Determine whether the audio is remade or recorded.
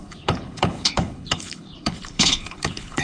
remade